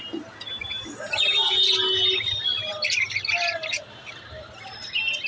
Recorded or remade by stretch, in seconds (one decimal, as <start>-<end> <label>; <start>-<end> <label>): 0.0-5.3 recorded